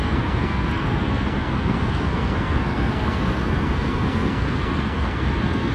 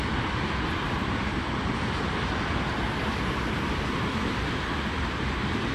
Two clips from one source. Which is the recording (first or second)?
second